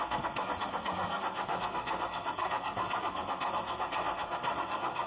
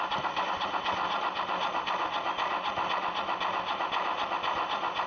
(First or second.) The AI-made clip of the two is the first